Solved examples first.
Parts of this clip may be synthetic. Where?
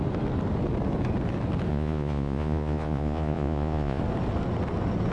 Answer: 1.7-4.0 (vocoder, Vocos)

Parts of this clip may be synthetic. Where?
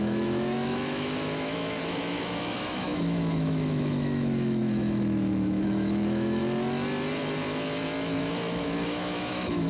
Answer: 0.0-6.4 (autoencoder, DAC-VAE); 8.2-9.7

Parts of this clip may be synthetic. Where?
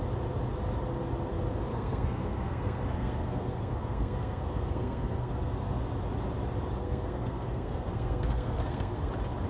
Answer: 1.7-5.8 (codec, SNAC); 6.8-9.1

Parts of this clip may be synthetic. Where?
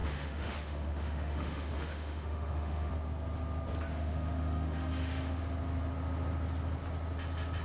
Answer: 0.0-2.9 (autoencoder, DAC-VAE); 3.9-5.4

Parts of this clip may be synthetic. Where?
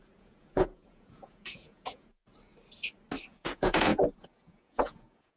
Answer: 0.0-2.2 (vocoder, Vocos); 3.3-5.4